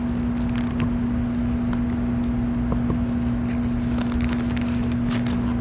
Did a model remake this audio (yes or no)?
no